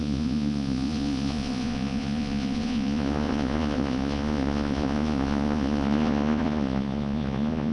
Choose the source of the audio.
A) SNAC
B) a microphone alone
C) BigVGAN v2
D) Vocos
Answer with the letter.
D